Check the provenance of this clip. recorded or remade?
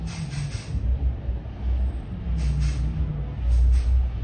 recorded